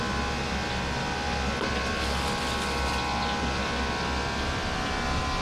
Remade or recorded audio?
recorded